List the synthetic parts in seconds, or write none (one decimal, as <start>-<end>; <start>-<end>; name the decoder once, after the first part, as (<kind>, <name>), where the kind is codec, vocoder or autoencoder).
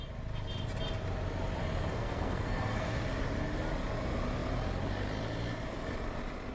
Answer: 1.9-2.9 (codec, SNAC)